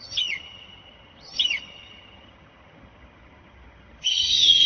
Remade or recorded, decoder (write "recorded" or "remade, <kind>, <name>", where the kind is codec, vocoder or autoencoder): remade, vocoder, HiFi-GAN